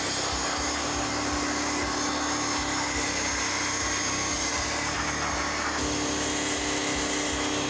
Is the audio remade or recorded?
recorded